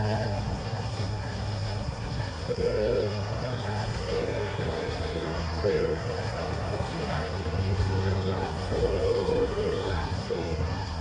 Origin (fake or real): fake